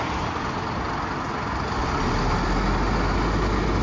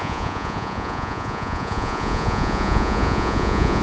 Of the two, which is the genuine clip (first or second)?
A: first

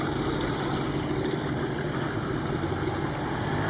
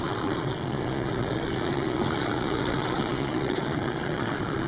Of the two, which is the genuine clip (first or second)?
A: first